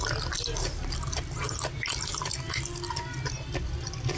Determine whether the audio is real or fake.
real